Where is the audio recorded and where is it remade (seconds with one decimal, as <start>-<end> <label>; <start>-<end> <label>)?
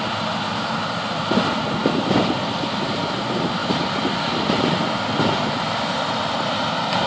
0.0-1.8 recorded; 1.8-2.6 remade; 2.6-3.6 recorded; 3.6-4.1 remade; 4.1-7.1 recorded